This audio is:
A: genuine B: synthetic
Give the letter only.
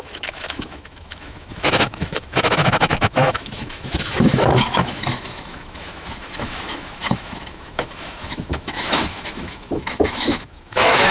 B